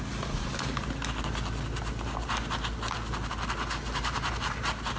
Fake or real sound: real